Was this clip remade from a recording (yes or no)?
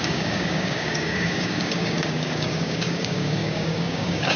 yes